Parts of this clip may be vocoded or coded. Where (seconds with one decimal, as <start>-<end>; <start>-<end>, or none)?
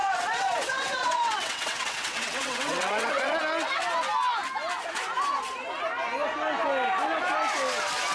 0.0-3.4